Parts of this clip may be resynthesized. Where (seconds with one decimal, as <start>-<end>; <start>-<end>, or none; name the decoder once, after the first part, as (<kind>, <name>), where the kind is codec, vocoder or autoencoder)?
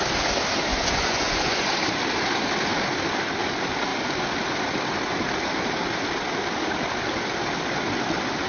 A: 0.7-1.7 (vocoder, Vocos)